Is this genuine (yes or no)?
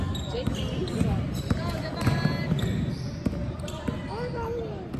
yes